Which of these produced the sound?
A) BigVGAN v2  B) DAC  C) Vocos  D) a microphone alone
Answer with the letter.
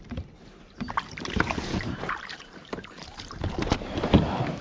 A